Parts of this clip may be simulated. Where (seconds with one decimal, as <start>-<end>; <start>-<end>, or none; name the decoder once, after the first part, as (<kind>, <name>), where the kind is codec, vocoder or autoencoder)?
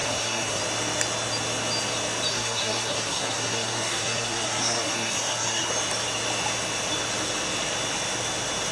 0.0-0.6 (codec, SNAC); 2.3-5.7